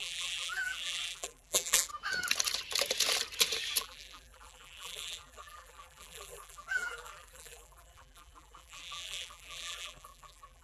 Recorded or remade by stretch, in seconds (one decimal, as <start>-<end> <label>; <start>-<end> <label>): 0.0-1.9 remade; 1.9-3.8 recorded; 3.8-10.6 remade